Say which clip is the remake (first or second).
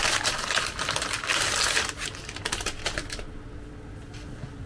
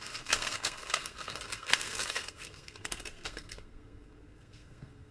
second